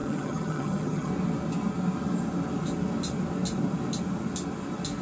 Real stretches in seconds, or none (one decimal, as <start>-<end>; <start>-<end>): 1.1-5.0

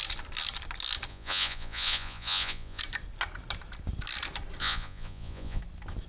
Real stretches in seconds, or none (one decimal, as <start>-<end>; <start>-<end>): 0.0-1.1; 2.8-4.6; 5.6-6.1

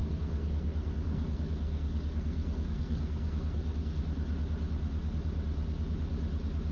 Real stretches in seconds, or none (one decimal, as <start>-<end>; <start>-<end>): 4.0-6.7

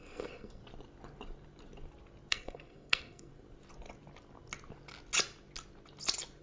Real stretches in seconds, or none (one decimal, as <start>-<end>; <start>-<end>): 0.6-2.3; 3.3-6.4

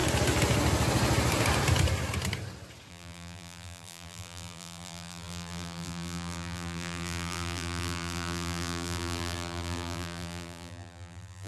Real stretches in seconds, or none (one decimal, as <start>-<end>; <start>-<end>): 0.0-2.9

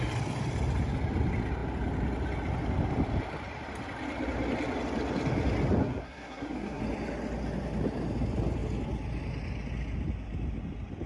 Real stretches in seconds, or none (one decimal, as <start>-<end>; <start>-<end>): 0.0-5.8; 6.8-11.1

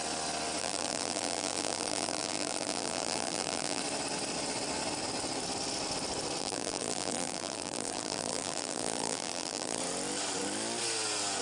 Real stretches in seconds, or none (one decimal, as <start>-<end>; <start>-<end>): 0.0-0.6; 3.8-6.4; 9.8-11.4

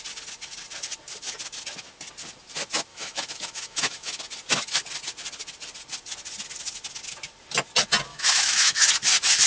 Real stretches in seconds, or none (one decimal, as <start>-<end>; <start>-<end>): 0.0-2.9; 4.2-8.1; 8.9-9.5